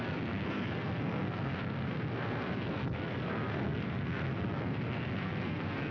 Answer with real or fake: fake